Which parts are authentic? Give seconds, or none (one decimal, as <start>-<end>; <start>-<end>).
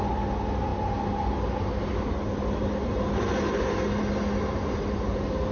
0.0-5.5